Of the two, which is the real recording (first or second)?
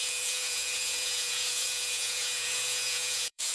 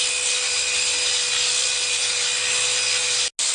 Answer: second